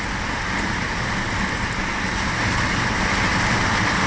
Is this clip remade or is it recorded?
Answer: recorded